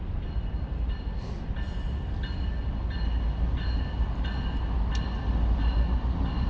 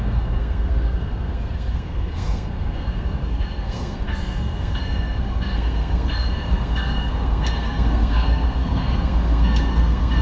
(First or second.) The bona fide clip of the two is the first